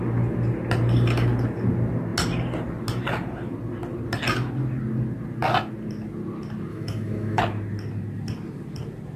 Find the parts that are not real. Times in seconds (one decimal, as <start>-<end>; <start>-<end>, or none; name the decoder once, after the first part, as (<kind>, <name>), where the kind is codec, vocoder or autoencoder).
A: 6.7-7.4 (autoencoder, DAC-VAE)